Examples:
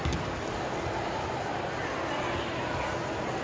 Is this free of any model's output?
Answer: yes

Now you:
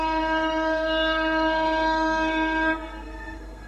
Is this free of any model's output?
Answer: no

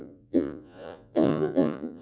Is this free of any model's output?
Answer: no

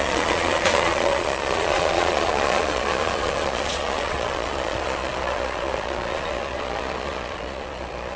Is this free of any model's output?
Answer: no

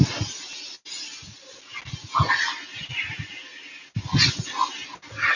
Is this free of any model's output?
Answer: yes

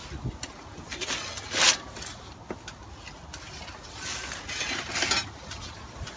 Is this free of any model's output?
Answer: yes